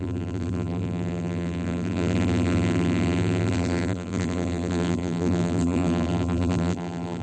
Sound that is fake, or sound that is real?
fake